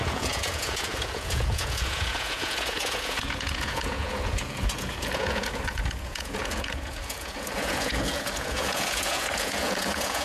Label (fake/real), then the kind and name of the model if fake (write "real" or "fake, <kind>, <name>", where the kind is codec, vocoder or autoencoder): fake, vocoder, Vocos